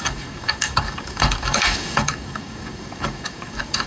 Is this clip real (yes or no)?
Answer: no